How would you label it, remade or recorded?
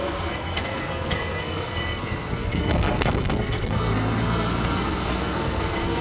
remade